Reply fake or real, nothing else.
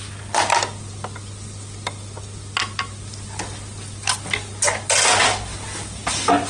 real